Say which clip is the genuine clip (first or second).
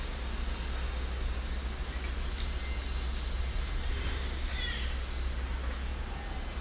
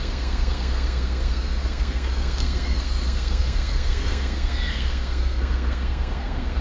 first